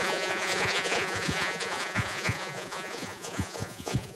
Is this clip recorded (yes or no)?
no